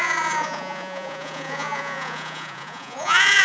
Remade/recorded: remade